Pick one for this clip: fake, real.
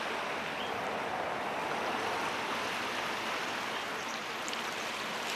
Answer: real